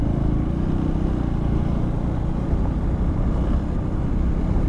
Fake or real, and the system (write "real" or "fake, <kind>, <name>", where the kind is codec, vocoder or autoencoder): real